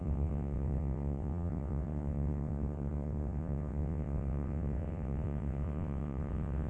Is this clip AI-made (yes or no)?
yes